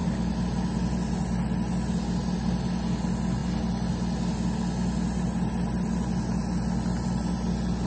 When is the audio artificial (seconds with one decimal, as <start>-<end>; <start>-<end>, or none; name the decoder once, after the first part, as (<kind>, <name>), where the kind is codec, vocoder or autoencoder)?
none